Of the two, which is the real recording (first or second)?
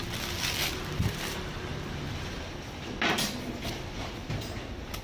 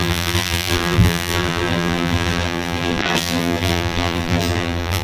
first